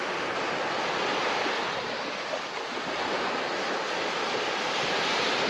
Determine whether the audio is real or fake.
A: real